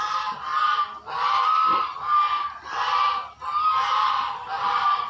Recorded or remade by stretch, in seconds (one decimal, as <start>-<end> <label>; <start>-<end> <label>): 0.0-5.1 recorded